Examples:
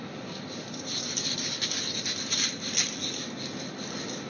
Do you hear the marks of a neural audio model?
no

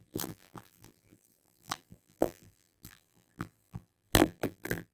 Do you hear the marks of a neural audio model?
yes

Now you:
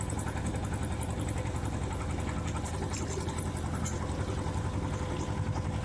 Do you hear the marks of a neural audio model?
no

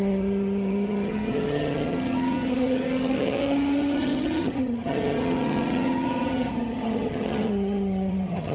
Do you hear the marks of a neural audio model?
yes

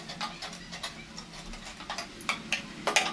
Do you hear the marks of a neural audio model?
no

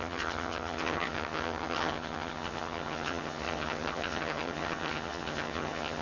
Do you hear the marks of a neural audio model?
yes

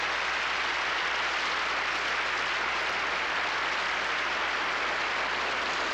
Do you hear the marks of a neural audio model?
no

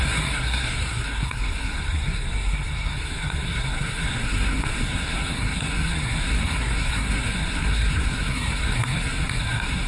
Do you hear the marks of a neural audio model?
yes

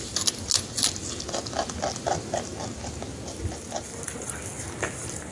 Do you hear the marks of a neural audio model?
no